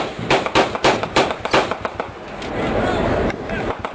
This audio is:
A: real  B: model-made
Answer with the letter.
A